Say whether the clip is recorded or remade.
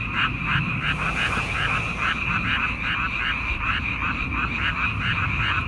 remade